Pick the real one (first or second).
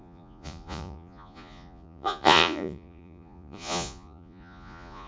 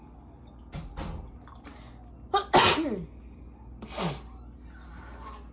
second